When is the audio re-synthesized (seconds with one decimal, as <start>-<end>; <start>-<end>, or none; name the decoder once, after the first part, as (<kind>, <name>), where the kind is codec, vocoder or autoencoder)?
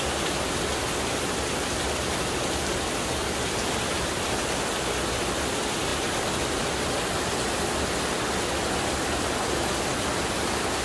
none